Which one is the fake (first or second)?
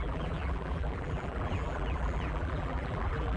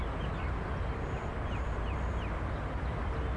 first